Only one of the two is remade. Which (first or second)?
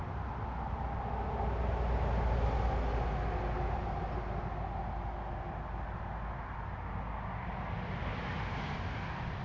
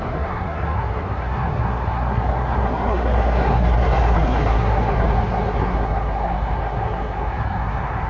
second